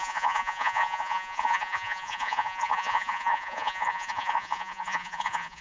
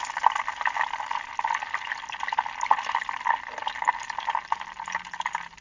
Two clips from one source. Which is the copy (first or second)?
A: first